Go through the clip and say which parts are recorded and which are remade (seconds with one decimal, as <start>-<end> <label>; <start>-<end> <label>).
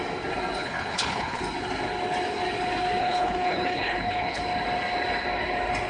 0.0-0.6 recorded; 0.6-1.4 remade; 1.4-3.0 recorded; 3.0-4.4 remade; 4.4-5.9 recorded